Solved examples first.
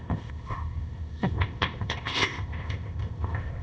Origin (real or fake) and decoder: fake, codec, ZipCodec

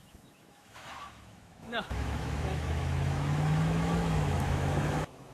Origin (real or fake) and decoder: fake, autoencoder, DAC-VAE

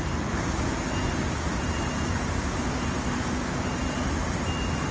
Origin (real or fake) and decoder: real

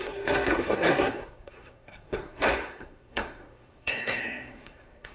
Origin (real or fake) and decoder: fake, codec, SNAC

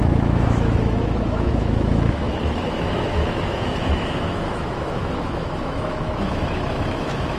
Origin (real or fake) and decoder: fake, autoencoder, DAC-VAE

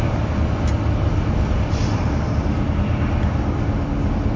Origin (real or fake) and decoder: real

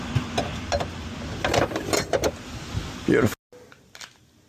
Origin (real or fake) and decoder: real